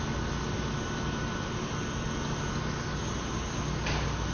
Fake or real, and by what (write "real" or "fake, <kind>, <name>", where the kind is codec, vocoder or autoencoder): real